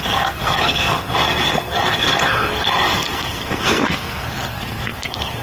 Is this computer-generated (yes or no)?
yes